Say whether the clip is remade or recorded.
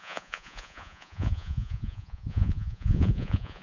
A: remade